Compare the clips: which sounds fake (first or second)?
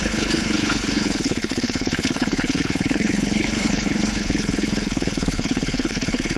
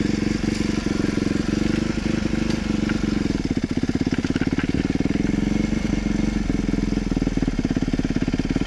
first